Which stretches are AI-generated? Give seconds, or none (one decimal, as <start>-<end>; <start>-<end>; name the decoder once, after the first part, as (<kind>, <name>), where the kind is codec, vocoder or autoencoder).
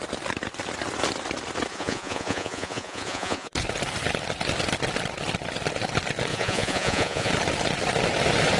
1.7-3.5 (vocoder, Vocos); 6.3-7.3